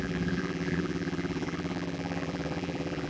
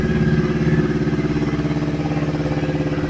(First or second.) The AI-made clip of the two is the first